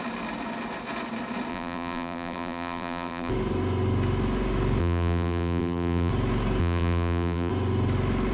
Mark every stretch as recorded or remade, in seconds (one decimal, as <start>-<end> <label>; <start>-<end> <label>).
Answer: 0.0-1.5 recorded; 1.5-3.3 remade; 3.3-4.8 recorded; 4.8-6.1 remade; 6.1-6.6 recorded; 6.6-7.5 remade; 7.5-8.3 recorded